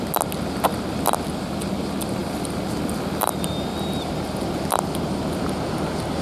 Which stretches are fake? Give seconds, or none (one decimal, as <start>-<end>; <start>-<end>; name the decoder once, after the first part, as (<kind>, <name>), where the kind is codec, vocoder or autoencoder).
2.2-4.1 (vocoder, BigVGAN v2)